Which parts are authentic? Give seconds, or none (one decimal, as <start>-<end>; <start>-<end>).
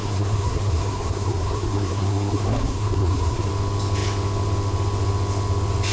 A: 3.5-5.9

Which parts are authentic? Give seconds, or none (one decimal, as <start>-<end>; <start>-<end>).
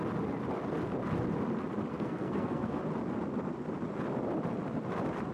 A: 0.0-1.9; 2.8-5.3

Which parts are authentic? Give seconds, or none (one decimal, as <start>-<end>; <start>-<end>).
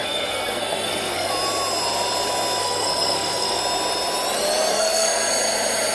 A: 1.3-2.6; 3.6-4.7; 5.3-5.9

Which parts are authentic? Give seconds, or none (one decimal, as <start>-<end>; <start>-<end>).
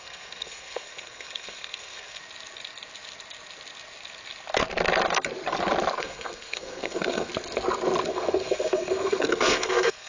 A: 2.2-6.0; 7.3-8.1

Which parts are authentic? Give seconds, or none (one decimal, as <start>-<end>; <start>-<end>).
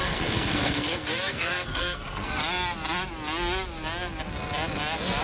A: 2.4-5.2